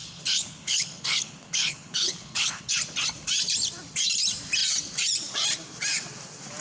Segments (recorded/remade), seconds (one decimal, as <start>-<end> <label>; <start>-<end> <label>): 0.0-2.7 remade; 2.7-6.6 recorded